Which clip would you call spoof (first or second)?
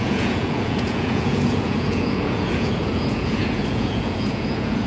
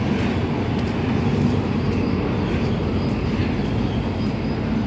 first